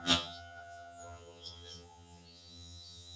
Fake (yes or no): yes